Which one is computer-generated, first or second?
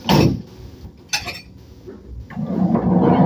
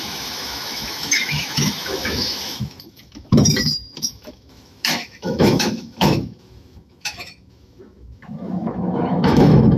second